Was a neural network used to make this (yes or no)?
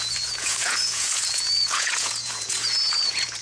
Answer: yes